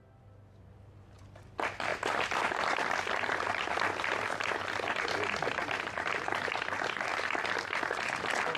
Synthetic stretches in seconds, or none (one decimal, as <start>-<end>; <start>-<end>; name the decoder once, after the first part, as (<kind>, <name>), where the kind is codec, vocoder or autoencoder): 1.9-3.2 (vocoder, BigVGAN v2)